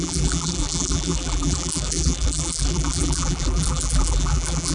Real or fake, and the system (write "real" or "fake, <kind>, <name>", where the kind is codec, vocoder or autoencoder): fake, vocoder, BigVGAN v2